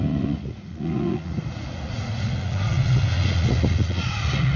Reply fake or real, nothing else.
fake